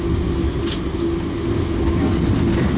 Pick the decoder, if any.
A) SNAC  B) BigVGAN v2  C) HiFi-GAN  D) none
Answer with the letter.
D